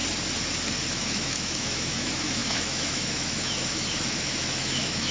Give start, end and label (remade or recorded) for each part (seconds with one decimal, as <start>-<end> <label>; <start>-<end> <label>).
0.0-0.9 recorded; 0.9-5.1 remade